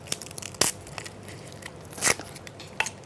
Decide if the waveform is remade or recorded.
recorded